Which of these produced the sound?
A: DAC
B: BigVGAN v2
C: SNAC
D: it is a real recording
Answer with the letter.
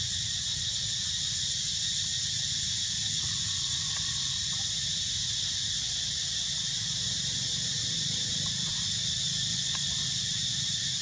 B